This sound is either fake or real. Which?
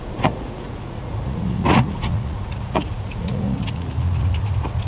fake